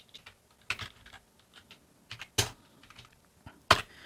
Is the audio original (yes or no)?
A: yes